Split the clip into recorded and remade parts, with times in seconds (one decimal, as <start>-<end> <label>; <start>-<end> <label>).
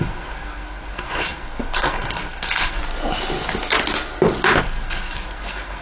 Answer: 0.0-2.8 remade; 2.8-4.6 recorded; 4.6-5.8 remade